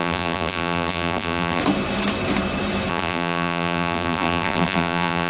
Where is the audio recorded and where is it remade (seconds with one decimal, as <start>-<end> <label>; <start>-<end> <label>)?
0.0-1.6 remade; 1.6-2.9 recorded; 2.9-5.3 remade